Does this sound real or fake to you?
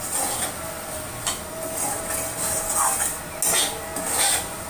real